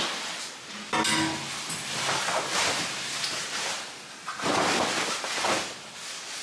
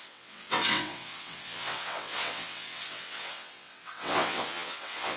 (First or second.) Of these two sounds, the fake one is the second